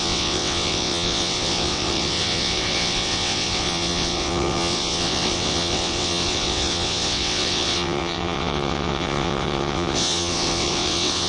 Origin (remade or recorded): remade